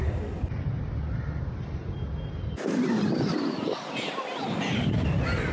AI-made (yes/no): no